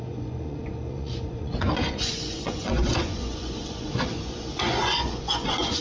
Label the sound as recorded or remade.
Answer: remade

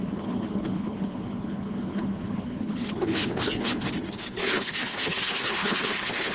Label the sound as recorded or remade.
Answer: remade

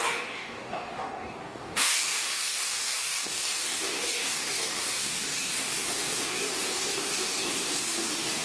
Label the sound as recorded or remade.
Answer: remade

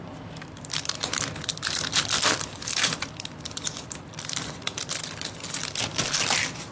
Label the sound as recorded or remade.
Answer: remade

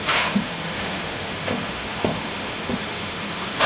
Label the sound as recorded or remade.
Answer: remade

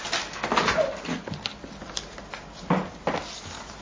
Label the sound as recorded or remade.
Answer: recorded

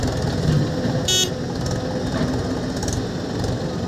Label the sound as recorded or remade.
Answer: recorded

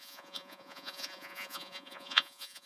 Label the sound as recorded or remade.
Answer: remade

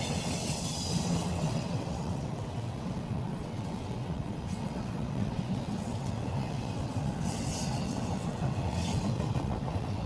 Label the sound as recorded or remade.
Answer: remade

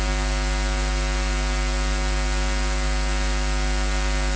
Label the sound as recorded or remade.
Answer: recorded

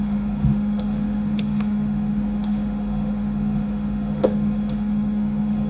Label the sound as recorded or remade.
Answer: remade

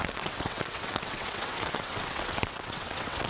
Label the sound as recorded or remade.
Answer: remade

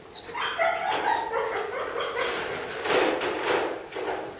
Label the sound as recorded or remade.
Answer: recorded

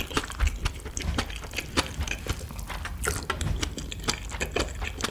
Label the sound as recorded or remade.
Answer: recorded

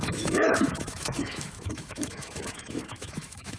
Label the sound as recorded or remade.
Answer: remade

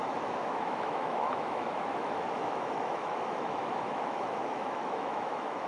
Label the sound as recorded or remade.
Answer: remade